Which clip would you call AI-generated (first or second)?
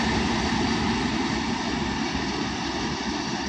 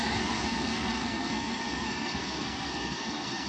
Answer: second